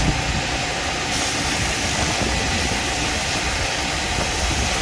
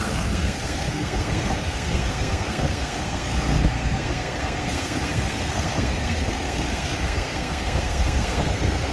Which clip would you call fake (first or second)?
second